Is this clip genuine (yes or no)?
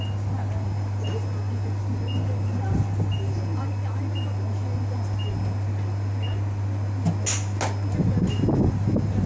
yes